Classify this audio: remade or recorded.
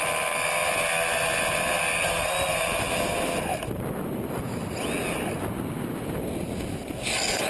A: recorded